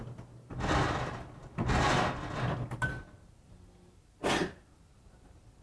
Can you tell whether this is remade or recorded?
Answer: recorded